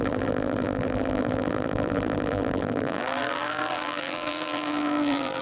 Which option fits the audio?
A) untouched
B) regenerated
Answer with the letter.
B